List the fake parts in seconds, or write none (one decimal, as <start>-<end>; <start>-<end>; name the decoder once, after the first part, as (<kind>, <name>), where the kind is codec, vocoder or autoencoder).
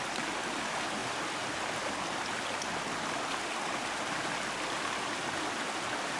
none